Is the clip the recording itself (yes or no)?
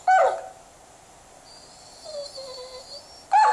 yes